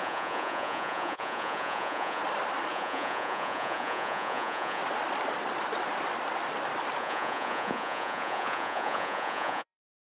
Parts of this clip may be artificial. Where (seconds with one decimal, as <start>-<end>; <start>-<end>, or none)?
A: 0.0-2.2; 2.7-4.8; 7.0-10.1